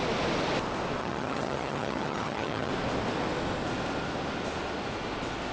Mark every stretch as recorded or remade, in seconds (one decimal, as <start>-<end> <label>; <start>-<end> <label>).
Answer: 0.0-1.0 recorded; 1.0-2.7 remade; 2.7-5.5 recorded